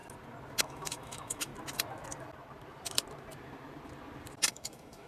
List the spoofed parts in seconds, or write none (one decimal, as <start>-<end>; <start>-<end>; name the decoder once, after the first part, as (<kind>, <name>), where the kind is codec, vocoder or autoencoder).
0.6-1.5 (autoencoder, DAC-VAE); 4.5-5.1